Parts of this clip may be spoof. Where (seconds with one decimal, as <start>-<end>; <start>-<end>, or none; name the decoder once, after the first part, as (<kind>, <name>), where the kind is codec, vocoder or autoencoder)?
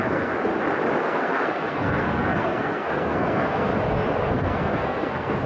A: 0.0-0.5 (codec, SNAC); 1.0-3.7; 4.3-5.5